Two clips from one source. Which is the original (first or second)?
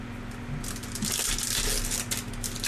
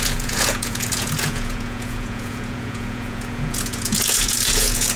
first